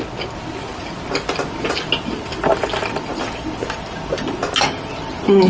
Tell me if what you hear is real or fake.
real